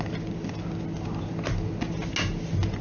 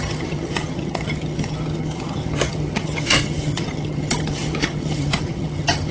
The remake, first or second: second